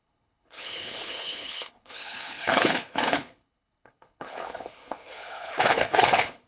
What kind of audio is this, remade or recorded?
remade